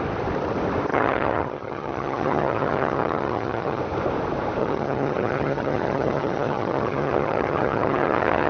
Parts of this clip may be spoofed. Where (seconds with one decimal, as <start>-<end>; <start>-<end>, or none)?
0.9-3.8; 4.6-8.5